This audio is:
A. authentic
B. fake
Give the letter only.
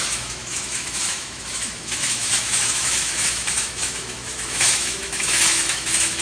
B